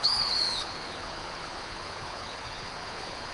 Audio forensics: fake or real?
fake